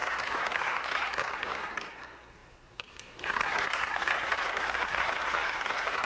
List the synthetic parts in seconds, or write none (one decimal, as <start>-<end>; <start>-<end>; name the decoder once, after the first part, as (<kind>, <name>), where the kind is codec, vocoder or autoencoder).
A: 0.0-6.1 (codec, SNAC)